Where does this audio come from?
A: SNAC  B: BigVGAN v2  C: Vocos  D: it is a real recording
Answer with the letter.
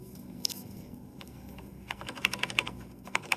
A